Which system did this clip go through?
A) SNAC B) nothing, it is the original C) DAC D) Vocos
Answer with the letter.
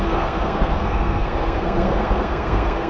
A